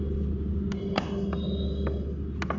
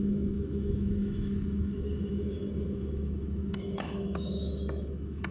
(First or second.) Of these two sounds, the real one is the first